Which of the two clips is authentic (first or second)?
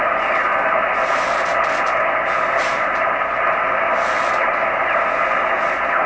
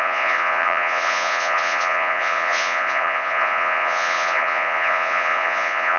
first